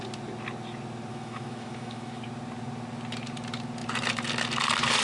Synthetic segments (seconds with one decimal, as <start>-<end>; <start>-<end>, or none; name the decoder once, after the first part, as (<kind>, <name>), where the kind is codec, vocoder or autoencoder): 1.1-2.2 (autoencoder, DAC-VAE)